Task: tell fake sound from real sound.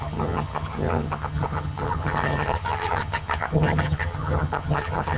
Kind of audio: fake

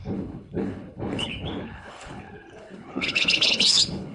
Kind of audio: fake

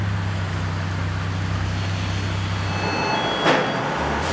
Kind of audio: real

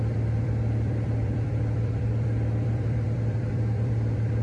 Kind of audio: fake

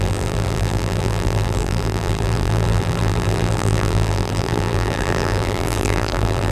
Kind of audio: fake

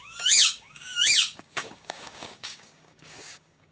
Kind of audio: fake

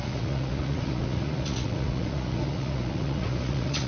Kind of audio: fake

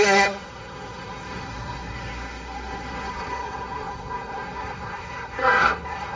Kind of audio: fake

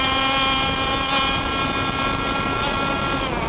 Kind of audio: real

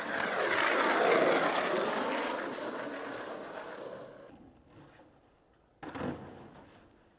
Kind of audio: real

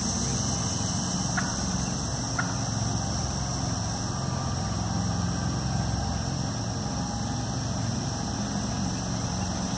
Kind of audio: real